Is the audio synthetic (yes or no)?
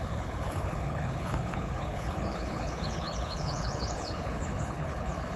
yes